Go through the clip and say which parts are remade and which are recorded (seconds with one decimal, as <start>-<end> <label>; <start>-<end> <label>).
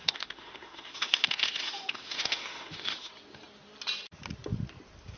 0.0-3.1 remade; 3.1-5.2 recorded